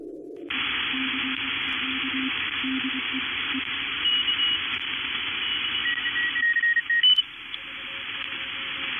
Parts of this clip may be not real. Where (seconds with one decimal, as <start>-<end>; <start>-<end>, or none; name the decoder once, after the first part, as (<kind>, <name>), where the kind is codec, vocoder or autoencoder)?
none